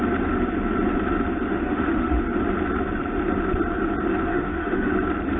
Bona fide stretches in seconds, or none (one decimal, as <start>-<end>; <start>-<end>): 0.0-1.5; 2.2-4.3; 4.9-5.4